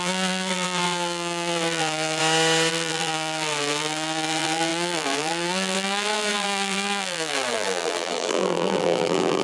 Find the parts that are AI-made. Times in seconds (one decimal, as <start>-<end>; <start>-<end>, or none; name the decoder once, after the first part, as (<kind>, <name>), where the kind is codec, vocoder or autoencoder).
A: 0.0-2.2 (vocoder, BigVGAN v2); 2.7-9.4